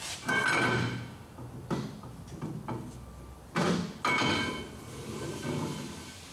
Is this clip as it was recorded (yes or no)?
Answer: yes